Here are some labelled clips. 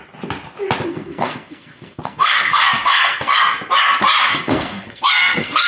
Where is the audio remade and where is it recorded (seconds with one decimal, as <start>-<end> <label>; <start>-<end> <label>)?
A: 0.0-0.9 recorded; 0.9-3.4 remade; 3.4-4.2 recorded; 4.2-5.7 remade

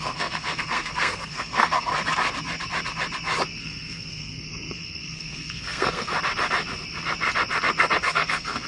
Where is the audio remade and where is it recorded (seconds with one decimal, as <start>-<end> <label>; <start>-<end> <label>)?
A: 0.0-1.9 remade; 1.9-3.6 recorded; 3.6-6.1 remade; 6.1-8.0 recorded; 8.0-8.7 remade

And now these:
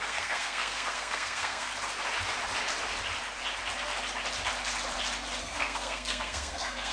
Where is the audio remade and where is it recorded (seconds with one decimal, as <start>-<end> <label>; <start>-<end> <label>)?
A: 0.0-1.7 remade; 1.7-5.4 recorded; 5.4-6.9 remade

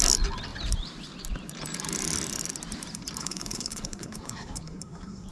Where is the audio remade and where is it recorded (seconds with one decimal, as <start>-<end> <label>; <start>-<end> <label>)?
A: 0.0-3.2 recorded; 3.2-5.3 remade

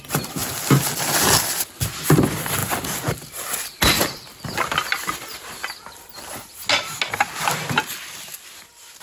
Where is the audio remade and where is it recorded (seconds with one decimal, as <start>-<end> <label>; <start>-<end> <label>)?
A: 0.0-9.0 recorded

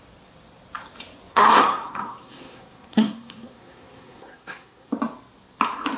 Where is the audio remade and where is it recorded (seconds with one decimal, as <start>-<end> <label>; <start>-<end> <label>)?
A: 0.0-1.3 recorded; 1.3-4.9 remade; 4.9-6.0 recorded

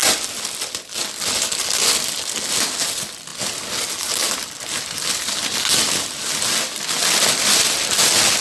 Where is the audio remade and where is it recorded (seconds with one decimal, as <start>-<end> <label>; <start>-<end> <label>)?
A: 0.0-8.4 recorded

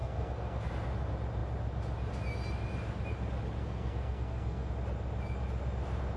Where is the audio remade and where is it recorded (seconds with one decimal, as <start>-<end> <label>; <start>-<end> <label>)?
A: 0.0-0.7 remade; 0.7-3.6 recorded; 3.6-4.7 remade; 4.7-6.2 recorded